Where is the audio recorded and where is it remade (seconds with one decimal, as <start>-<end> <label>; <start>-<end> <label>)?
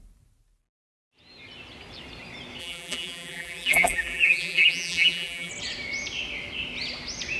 0.0-2.6 recorded; 2.6-5.5 remade; 5.5-7.4 recorded